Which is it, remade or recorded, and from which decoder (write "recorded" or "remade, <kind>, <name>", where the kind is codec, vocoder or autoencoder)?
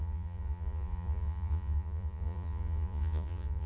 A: remade, vocoder, Vocos